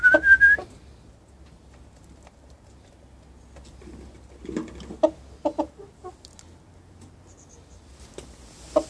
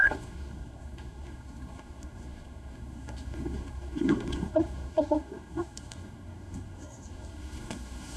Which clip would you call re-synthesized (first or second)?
second